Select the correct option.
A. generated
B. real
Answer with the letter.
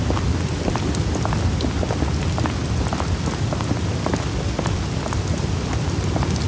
B